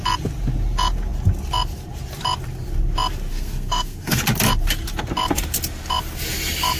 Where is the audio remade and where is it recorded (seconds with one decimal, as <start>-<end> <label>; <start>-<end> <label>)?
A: 0.0-3.3 recorded; 3.3-4.2 remade; 4.2-6.8 recorded